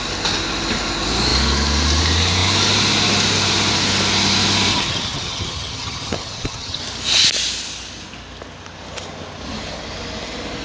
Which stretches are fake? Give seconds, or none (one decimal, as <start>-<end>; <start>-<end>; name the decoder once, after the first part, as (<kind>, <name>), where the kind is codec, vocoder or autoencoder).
4.7-6.8 (vocoder, HiFi-GAN)